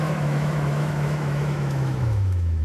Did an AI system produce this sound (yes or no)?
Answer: yes